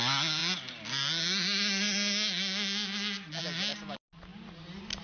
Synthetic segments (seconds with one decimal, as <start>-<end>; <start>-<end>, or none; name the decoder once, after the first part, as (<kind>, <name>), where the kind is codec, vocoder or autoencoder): none